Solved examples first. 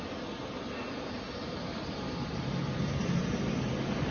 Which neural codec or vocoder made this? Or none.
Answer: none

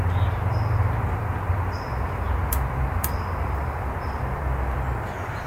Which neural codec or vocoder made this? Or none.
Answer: vocoder, BigVGAN v2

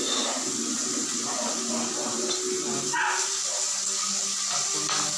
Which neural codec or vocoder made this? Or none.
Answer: none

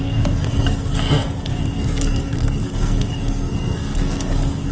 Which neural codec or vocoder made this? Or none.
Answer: codec, SNAC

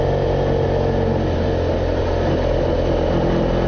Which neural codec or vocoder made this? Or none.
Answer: none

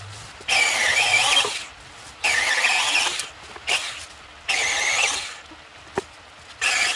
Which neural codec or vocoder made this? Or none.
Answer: none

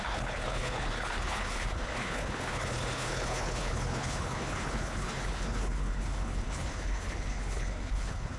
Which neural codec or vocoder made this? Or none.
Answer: codec, HILCodec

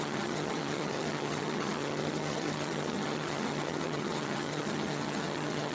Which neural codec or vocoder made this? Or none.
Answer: vocoder, HiFi-GAN